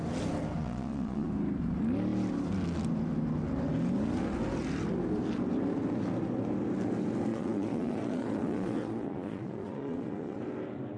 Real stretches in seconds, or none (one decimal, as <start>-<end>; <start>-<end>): 0.0-0.6; 1.3-7.3; 10.4-11.0